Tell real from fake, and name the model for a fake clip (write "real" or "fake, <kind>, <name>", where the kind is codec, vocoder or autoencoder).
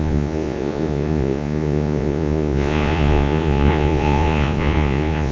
fake, vocoder, Vocos